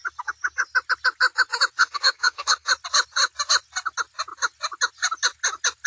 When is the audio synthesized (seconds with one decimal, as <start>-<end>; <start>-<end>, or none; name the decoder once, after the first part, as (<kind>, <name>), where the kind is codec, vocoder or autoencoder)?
1.8-2.7 (codec, SNAC)